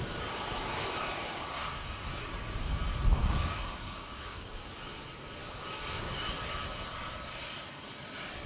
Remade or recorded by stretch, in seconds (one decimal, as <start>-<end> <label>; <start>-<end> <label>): 0.0-3.2 recorded; 3.2-4.7 remade; 4.7-5.4 recorded; 5.4-6.3 remade; 6.3-8.5 recorded